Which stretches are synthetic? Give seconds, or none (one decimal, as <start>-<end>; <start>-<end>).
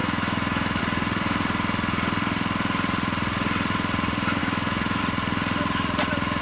0.0-0.8; 4.4-5.0